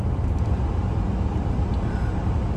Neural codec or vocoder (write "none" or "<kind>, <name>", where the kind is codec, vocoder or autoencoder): none